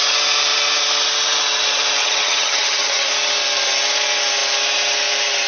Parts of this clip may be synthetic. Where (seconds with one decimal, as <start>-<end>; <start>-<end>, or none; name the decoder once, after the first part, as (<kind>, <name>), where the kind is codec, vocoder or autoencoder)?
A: 2.0-3.1 (vocoder, HiFi-GAN)